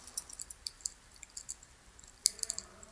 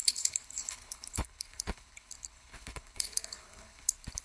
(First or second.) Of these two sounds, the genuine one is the first